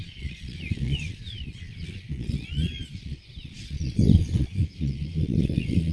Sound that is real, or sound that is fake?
fake